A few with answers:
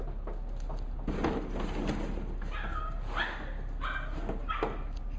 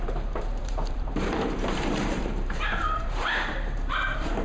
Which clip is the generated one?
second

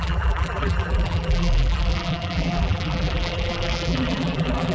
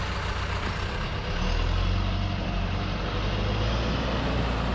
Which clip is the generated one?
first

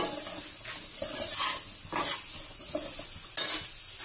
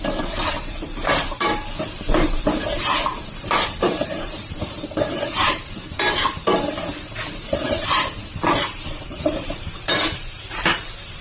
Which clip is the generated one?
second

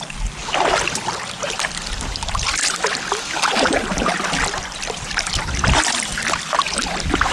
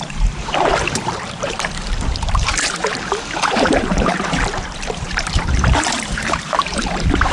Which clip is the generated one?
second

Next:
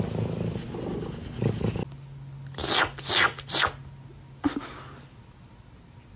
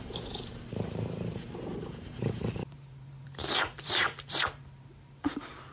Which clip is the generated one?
second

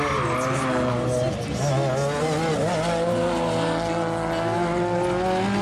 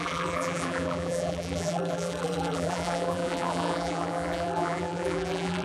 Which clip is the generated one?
second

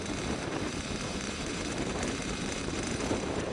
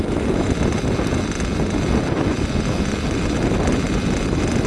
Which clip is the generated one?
first